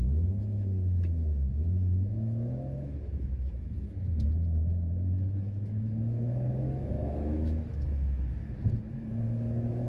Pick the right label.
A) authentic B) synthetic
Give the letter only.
B